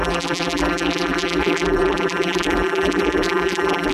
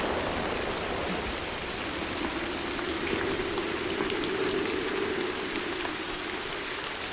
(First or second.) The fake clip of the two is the first